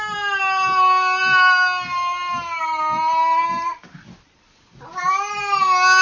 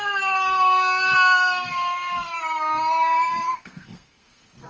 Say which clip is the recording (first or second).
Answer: first